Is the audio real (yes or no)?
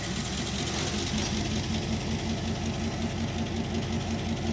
yes